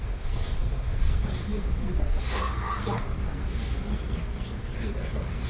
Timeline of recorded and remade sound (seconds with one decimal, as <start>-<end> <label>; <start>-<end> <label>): 0.0-5.5 remade